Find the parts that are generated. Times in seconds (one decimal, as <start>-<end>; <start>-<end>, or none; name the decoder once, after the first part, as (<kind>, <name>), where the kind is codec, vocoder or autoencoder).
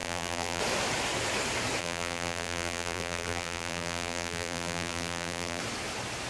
0.0-0.6 (vocoder, BigVGAN v2); 1.8-5.6